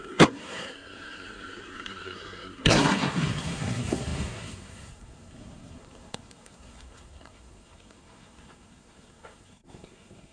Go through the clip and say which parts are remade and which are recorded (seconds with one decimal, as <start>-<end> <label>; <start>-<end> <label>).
0.0-10.3 remade